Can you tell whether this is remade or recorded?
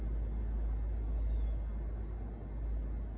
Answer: recorded